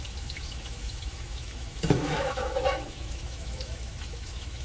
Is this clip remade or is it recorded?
remade